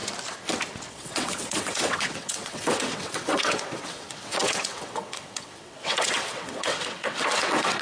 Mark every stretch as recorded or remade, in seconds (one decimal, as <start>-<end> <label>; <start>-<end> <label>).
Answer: 0.0-0.9 recorded; 0.9-7.8 remade